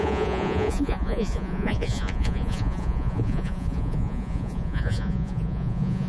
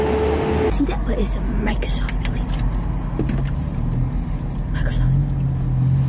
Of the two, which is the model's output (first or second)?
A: first